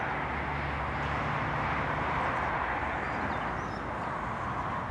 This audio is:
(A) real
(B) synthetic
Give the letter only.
A